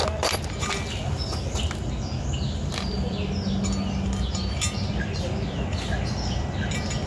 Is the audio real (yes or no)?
yes